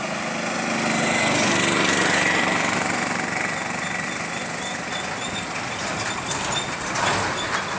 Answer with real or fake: real